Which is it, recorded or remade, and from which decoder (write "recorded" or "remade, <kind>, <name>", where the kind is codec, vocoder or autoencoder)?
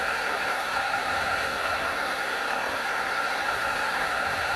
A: remade, codec, SNAC